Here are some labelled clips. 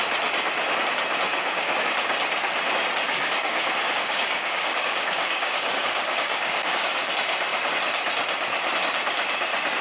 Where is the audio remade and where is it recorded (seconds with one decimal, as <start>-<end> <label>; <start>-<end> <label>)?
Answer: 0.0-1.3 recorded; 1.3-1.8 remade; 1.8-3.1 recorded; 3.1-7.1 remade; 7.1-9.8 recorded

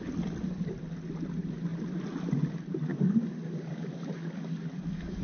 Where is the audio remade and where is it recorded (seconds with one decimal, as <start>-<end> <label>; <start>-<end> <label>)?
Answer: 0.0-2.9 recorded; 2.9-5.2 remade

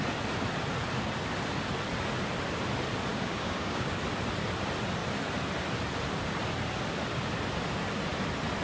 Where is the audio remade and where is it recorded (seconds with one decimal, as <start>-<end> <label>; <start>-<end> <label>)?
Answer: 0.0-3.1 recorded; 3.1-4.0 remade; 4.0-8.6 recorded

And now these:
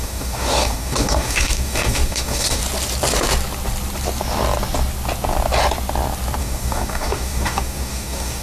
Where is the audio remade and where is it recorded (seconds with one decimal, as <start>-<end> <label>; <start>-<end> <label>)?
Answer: 0.0-2.6 remade; 2.6-6.4 recorded; 6.4-8.4 remade

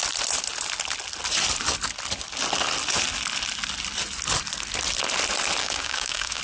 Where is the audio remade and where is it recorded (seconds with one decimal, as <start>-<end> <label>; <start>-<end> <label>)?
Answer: 0.0-5.6 recorded; 5.6-6.4 remade

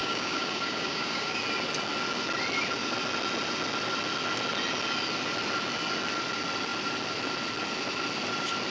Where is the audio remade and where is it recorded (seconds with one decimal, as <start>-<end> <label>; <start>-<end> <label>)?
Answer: 0.0-1.4 remade; 1.4-8.7 recorded

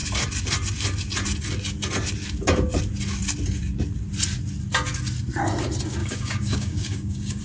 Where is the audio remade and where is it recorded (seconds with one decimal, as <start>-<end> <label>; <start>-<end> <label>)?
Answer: 0.0-6.0 recorded; 6.0-7.4 remade